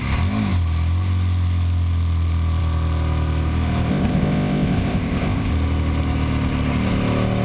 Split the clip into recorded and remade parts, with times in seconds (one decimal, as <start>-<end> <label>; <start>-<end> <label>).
0.0-3.9 recorded; 3.9-5.5 remade; 5.5-7.4 recorded